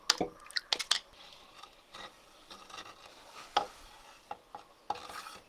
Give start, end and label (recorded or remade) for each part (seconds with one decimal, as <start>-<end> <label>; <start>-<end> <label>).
0.0-3.1 recorded; 3.1-3.8 remade; 3.8-5.5 recorded